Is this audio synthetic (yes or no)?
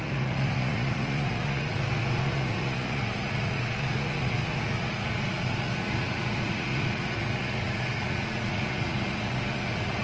yes